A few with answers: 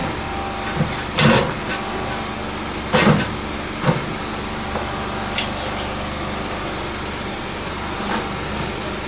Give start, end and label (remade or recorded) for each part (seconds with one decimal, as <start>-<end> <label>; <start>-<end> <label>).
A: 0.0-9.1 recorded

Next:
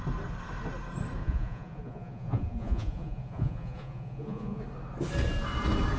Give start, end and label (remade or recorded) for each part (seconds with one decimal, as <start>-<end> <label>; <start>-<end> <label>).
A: 0.0-1.2 recorded; 1.2-4.6 remade; 4.6-6.0 recorded

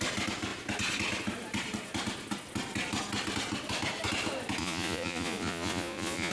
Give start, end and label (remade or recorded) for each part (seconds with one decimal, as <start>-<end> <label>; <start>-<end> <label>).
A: 0.0-4.6 recorded; 4.6-6.3 remade

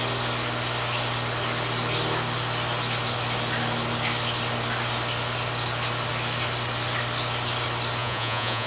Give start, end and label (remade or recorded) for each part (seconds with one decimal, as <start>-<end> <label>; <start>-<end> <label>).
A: 0.0-8.0 recorded; 8.0-8.7 remade

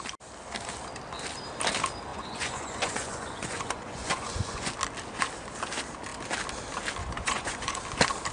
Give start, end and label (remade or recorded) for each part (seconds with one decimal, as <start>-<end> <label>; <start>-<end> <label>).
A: 0.0-2.1 recorded; 2.1-4.7 remade; 4.7-7.0 recorded; 7.0-7.8 remade; 7.8-8.3 recorded